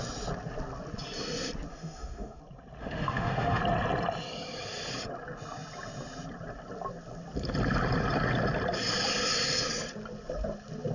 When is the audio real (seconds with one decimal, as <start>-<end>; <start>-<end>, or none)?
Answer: 0.0-1.7; 2.4-2.8; 3.6-10.9